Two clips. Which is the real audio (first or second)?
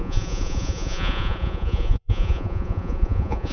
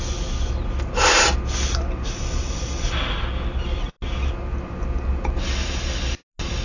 second